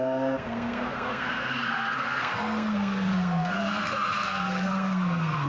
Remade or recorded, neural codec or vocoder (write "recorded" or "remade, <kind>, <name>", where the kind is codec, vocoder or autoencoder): remade, codec, SNAC